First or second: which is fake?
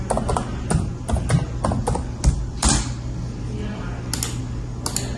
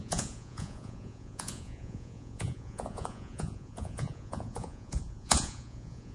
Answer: second